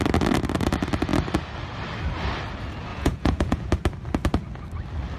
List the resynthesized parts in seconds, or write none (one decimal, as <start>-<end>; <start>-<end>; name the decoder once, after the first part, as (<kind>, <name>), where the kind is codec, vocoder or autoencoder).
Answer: 2.9-3.7 (vocoder, Vocos)